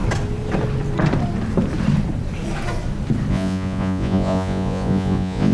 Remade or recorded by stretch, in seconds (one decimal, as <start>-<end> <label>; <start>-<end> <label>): 0.0-3.3 recorded; 3.3-5.5 remade